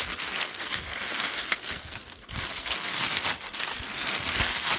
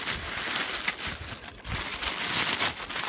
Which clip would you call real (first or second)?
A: second